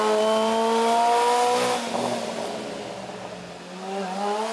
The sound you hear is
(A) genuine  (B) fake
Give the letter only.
A